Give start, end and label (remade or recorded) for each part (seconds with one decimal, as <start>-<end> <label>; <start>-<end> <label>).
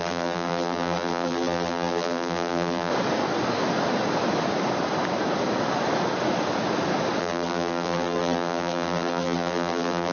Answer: 0.0-2.9 remade; 2.9-7.2 recorded; 7.2-10.1 remade